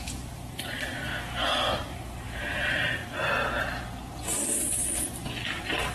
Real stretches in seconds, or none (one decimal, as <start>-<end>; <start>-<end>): 1.1-1.9; 3.0-5.5